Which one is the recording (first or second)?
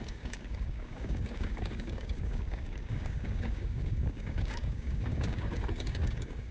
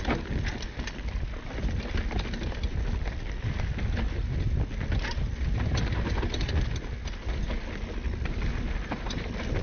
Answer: second